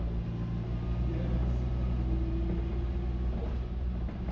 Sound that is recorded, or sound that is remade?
recorded